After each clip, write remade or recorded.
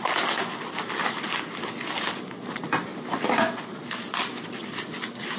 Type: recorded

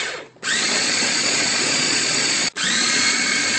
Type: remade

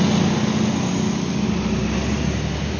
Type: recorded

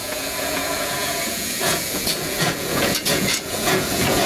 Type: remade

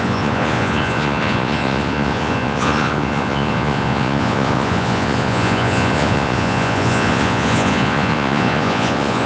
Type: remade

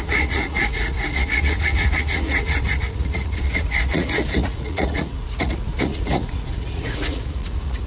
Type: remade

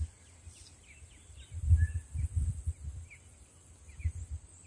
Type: recorded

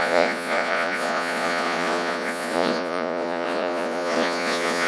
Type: remade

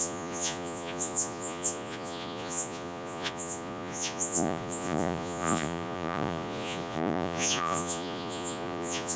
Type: remade